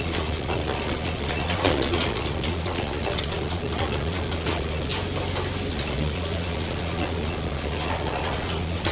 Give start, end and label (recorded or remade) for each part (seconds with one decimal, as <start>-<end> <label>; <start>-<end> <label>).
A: 0.0-4.9 remade; 4.9-5.7 recorded; 5.7-8.9 remade